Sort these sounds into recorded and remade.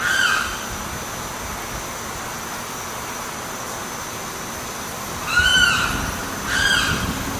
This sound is recorded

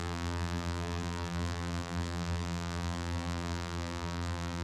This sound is remade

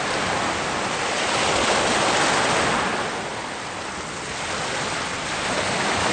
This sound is recorded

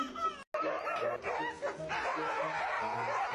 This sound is recorded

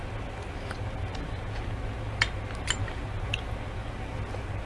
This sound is recorded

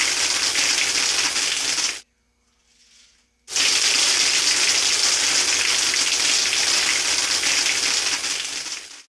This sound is recorded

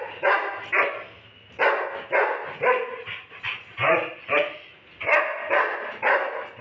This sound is recorded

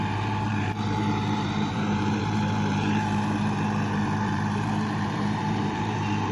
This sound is remade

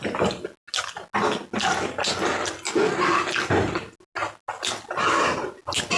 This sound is recorded